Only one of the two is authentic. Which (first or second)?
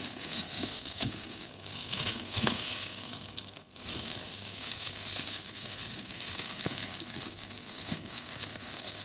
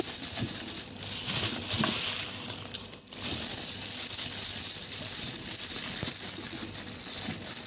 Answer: second